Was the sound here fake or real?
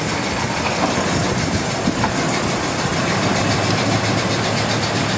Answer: fake